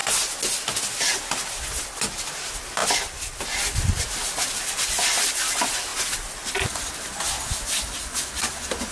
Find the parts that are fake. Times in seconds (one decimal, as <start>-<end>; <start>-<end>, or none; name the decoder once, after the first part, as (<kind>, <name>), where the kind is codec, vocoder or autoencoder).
none